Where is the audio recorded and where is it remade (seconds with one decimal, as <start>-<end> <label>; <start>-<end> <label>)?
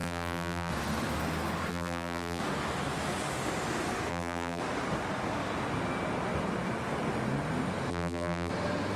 0.0-0.7 remade; 0.7-1.7 recorded; 1.7-2.4 remade; 2.4-4.1 recorded; 4.1-4.6 remade; 4.6-7.9 recorded; 7.9-8.5 remade; 8.5-9.0 recorded